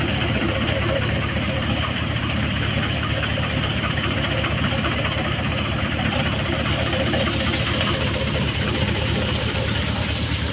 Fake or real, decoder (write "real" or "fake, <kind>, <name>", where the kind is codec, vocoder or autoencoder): fake, vocoder, BigVGAN v2